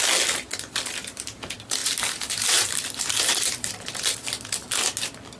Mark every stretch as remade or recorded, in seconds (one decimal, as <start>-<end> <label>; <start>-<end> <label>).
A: 0.0-1.8 recorded; 1.8-3.7 remade; 3.7-5.4 recorded